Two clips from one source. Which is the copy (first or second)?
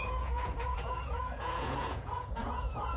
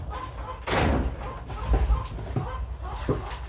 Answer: first